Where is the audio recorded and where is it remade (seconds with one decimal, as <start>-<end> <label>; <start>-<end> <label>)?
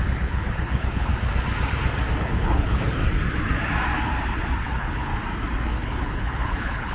0.0-1.1 remade; 1.1-2.2 recorded; 2.2-3.0 remade; 3.0-4.6 recorded; 4.6-5.1 remade; 5.1-5.7 recorded; 5.7-6.9 remade